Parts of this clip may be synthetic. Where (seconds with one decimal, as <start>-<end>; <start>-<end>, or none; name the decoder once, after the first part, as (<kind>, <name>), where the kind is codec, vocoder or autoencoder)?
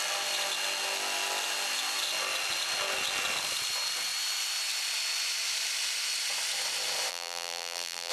7.1-8.1 (vocoder, BigVGAN v2)